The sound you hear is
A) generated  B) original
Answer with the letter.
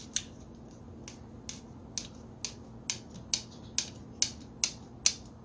B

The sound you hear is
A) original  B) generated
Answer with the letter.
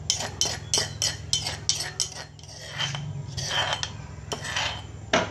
A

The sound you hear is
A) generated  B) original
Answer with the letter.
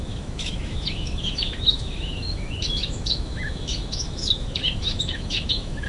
A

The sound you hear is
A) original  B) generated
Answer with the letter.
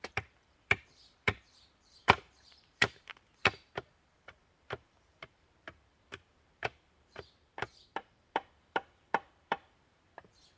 B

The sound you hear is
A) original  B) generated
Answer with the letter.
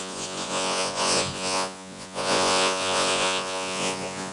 B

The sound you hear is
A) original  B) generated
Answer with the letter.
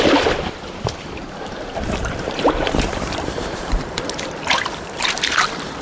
B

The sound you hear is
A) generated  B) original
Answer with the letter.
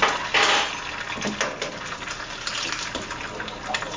B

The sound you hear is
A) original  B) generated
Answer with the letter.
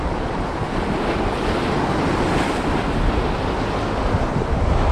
A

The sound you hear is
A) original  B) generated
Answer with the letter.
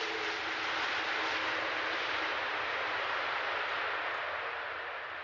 A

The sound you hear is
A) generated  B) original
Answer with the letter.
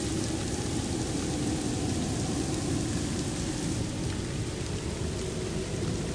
B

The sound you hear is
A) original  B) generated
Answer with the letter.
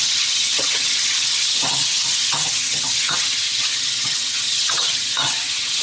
B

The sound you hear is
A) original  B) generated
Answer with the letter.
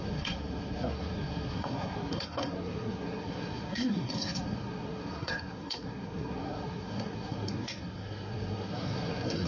B